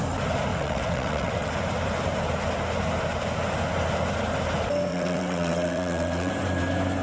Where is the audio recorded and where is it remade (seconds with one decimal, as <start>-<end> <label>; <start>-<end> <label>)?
0.0-0.5 recorded; 0.5-1.5 remade; 1.5-4.9 recorded; 4.9-6.3 remade; 6.3-7.0 recorded